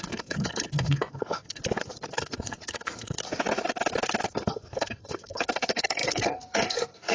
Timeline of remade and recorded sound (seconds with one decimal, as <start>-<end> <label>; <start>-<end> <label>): 0.0-1.6 remade; 1.6-2.2 recorded; 2.2-3.2 remade; 3.2-4.2 recorded; 4.2-7.1 remade